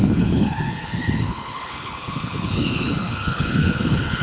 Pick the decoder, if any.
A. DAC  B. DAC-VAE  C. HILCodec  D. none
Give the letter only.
C